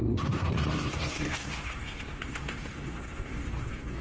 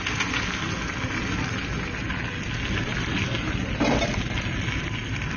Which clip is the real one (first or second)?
second